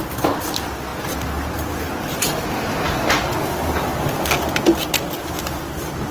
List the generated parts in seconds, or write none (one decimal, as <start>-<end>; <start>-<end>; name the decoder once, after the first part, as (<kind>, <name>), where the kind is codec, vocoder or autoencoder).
none